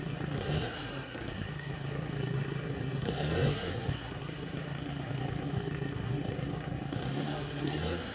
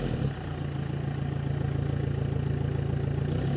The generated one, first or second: first